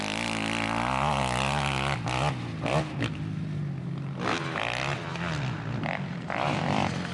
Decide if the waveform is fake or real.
real